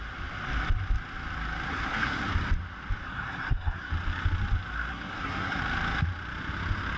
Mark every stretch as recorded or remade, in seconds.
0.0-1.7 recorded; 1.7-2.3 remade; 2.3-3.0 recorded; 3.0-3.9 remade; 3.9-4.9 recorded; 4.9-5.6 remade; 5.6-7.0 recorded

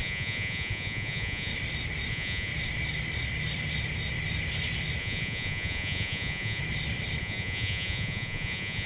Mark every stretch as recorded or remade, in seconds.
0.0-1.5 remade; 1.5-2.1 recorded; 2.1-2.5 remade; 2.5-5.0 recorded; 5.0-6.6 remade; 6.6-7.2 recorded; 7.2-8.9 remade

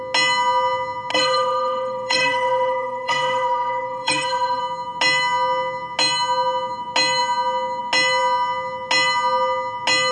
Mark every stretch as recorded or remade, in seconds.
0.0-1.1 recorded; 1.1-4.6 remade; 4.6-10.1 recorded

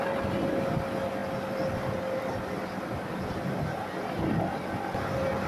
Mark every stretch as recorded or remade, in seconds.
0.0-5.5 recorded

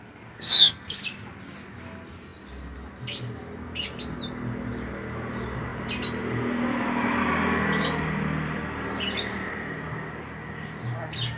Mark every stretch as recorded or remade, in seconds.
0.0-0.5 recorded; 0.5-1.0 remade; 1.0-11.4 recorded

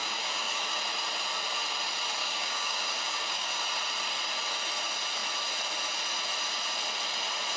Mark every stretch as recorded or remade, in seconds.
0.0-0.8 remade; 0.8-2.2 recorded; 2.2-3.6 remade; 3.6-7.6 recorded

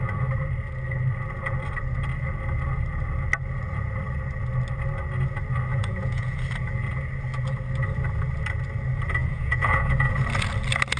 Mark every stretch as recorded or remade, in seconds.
0.0-5.7 recorded; 5.7-6.4 remade; 6.4-9.2 recorded; 9.2-10.1 remade; 10.1-11.0 recorded